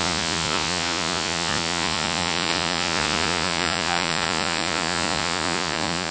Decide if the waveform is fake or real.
fake